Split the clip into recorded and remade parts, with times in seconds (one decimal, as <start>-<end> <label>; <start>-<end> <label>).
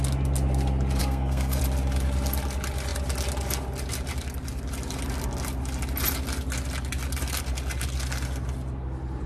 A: 0.0-1.0 recorded; 1.0-1.6 remade; 1.6-9.3 recorded